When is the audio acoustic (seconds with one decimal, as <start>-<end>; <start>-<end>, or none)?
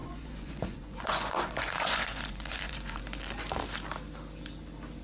3.0-5.0